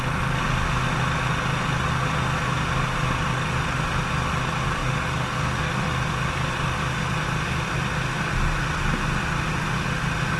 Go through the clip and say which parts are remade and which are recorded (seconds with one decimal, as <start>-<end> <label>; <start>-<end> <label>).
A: 0.0-4.8 recorded; 4.8-5.7 remade; 5.7-10.4 recorded